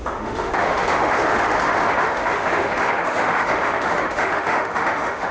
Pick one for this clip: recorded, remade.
remade